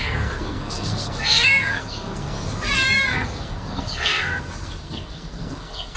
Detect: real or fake fake